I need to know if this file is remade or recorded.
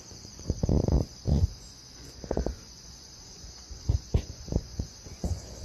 remade